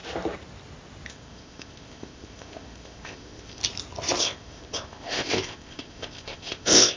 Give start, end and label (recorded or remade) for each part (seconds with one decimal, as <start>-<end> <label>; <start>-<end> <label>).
0.0-1.1 recorded; 1.1-3.6 remade; 3.6-4.2 recorded; 4.2-7.0 remade